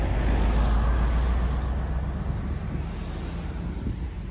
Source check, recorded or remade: recorded